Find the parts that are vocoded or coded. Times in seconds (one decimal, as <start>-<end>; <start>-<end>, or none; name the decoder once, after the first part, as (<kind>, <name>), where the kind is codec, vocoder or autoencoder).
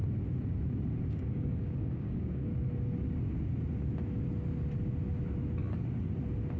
1.1-2.5 (codec, DAC)